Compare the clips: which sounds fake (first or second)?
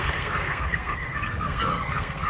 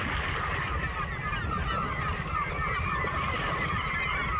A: first